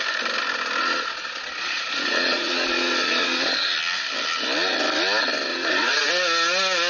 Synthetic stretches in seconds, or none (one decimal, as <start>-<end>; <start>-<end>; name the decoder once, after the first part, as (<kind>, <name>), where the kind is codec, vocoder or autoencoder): 0.8-3.7 (vocoder, Vocos); 5.5-6.1